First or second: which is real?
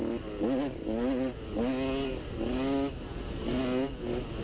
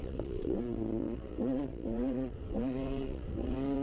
first